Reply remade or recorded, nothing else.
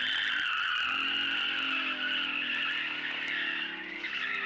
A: recorded